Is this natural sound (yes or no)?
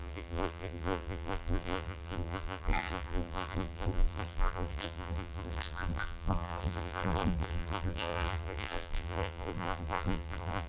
no